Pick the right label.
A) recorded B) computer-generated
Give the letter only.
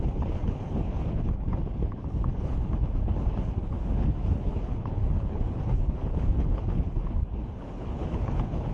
B